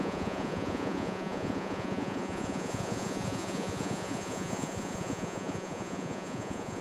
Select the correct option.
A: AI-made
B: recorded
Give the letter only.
A